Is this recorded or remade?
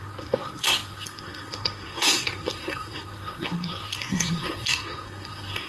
remade